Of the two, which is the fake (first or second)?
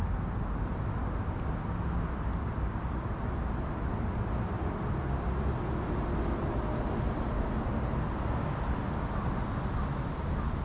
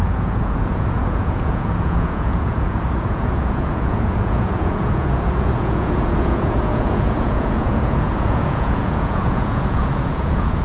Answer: second